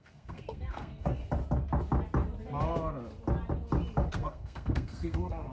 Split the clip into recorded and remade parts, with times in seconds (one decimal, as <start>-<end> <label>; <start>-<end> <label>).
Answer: 0.0-1.2 remade; 1.2-4.1 recorded; 4.1-5.5 remade